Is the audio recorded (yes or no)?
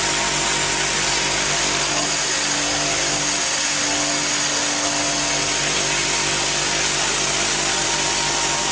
yes